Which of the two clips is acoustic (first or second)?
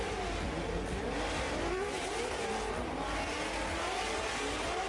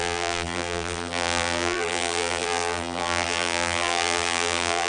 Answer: first